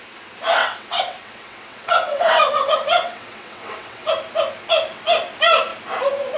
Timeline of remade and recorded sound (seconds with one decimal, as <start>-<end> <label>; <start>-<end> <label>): 0.0-0.6 recorded; 0.6-4.1 remade; 4.1-6.4 recorded

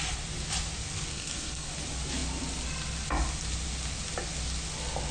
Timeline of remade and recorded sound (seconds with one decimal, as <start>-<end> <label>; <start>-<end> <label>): 0.0-1.1 recorded; 1.1-1.7 remade; 1.7-5.1 recorded

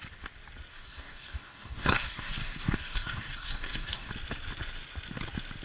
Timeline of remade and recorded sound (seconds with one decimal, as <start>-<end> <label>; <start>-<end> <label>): 0.0-0.7 recorded; 0.7-4.1 remade; 4.1-5.6 recorded